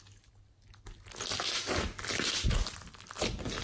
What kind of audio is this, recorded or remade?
recorded